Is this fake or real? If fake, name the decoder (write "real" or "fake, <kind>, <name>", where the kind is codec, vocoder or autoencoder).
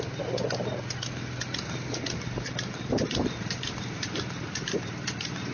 real